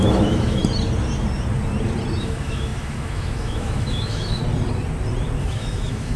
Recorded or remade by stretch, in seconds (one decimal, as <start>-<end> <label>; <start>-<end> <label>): 0.0-0.6 remade; 0.6-2.2 recorded; 2.2-4.4 remade; 4.4-5.4 recorded; 5.4-6.2 remade